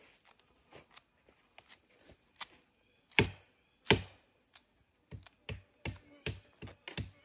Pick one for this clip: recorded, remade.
recorded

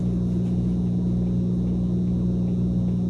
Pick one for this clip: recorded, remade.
recorded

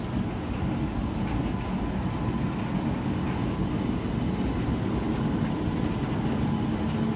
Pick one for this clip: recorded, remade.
recorded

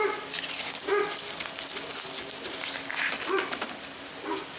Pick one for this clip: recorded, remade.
recorded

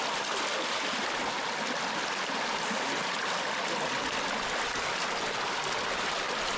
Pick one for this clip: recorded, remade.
recorded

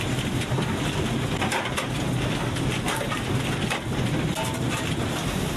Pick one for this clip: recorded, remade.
recorded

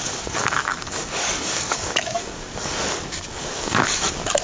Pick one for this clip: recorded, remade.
remade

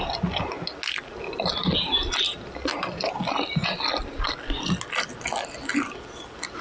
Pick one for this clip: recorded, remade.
recorded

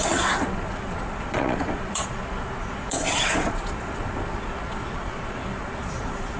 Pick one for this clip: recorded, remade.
remade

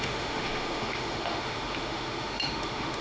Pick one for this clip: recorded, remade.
remade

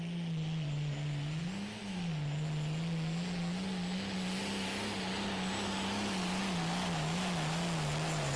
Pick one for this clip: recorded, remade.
recorded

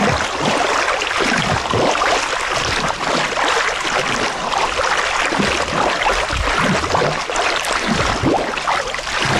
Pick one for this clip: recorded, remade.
recorded